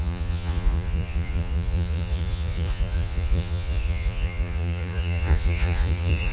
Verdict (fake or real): fake